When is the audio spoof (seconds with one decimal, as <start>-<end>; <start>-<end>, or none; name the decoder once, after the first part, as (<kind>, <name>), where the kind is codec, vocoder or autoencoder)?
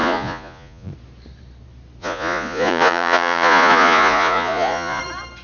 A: 0.0-0.9 (vocoder, Vocos); 2.0-5.0